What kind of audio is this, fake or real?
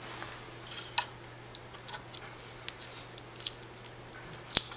real